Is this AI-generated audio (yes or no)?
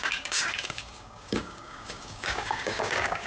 yes